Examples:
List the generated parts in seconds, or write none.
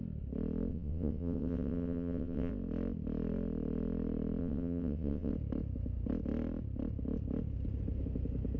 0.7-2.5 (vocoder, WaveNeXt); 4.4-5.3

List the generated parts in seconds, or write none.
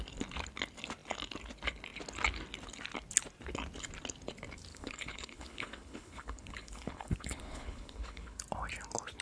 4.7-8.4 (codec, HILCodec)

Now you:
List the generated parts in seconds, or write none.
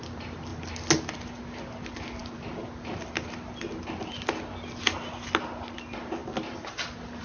none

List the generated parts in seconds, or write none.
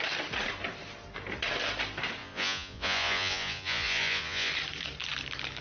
2.2-4.5 (vocoder, Vocos)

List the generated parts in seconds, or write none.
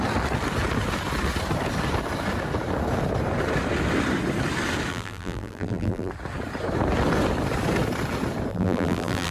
4.9-6.1 (vocoder, BigVGAN v2); 8.5-9.3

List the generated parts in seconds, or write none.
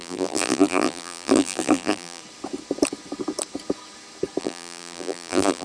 0.0-2.2 (vocoder, BigVGAN v2); 4.4-5.6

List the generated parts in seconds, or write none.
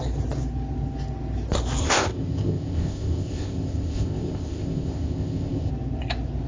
1.8-5.7 (codec, ZipCodec)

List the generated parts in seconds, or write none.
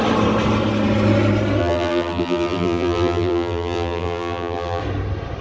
1.6-4.8 (vocoder, BigVGAN v2)